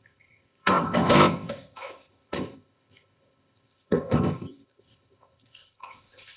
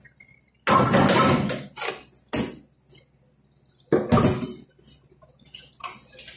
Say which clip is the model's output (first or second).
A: first